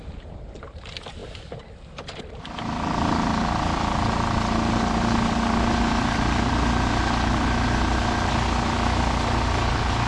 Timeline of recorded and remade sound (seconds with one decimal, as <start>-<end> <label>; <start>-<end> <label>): 0.0-10.1 recorded